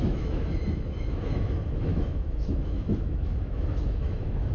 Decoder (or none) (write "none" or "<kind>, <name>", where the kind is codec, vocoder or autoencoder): autoencoder, DAC-VAE